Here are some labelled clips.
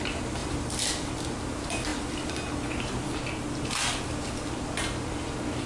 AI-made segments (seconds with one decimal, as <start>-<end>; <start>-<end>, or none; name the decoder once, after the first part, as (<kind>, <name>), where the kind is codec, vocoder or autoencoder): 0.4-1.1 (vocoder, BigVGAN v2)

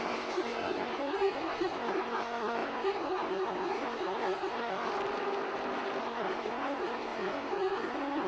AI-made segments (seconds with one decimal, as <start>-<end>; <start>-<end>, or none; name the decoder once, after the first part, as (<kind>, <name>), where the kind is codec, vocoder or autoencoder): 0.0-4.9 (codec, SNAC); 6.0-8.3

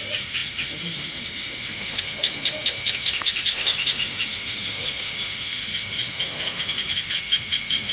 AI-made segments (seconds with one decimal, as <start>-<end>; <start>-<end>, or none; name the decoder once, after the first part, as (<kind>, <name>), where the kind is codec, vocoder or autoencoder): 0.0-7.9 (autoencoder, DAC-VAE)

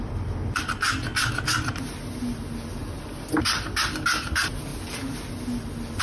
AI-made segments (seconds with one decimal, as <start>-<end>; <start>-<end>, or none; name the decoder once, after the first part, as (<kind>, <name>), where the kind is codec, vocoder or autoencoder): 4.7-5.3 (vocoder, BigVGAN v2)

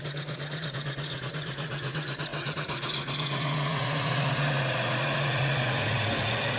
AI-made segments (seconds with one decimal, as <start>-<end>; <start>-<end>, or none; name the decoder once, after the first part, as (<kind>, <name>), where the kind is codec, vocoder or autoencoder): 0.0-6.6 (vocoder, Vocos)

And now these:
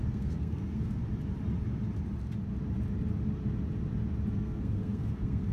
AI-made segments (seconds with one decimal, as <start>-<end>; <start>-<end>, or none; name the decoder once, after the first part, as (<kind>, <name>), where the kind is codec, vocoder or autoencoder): 0.0-1.0 (codec, SNAC); 4.3-5.5